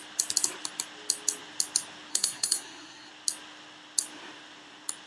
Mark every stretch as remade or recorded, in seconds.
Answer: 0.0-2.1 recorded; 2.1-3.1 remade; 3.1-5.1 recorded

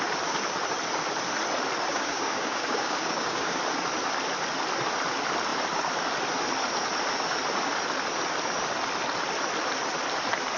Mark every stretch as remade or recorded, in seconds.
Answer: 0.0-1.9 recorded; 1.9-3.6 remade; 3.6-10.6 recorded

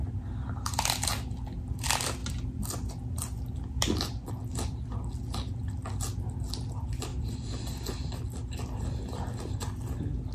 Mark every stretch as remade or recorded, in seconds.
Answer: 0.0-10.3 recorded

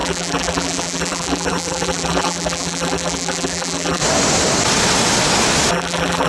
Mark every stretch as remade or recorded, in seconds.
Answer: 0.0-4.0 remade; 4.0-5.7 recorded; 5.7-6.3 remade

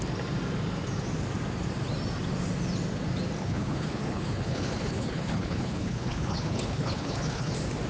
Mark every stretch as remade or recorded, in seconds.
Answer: 0.0-3.4 recorded; 3.4-7.5 remade; 7.5-7.9 recorded

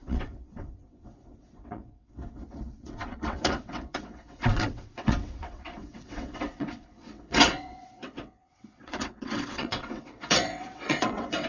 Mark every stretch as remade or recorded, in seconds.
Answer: 0.0-11.5 remade